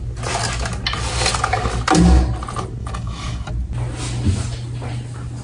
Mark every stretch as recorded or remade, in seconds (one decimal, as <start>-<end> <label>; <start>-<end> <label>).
0.0-2.8 recorded; 2.8-3.5 remade; 3.5-5.4 recorded